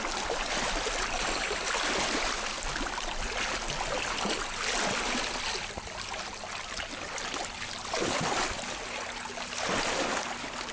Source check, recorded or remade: recorded